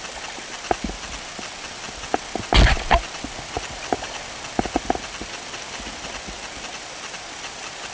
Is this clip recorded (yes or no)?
yes